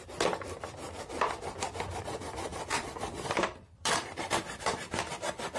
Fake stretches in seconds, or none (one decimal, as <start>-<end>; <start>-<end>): 2.5-5.1